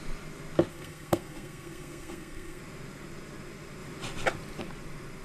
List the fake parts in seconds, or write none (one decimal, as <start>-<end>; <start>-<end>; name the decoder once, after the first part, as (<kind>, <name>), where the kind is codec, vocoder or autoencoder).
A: 0.7-2.6 (codec, SNAC)